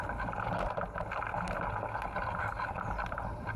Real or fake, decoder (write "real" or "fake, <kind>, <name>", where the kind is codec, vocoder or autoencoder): real